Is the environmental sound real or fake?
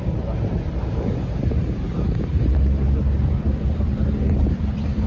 fake